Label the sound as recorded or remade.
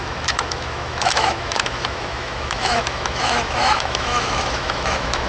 remade